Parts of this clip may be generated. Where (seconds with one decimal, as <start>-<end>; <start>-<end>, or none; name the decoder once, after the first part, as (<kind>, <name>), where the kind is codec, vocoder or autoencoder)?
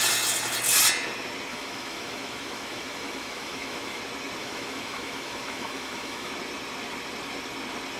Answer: 1.5-4.0 (autoencoder, DAC-VAE); 4.4-6.3